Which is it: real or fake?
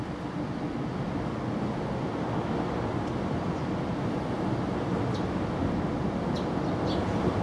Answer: real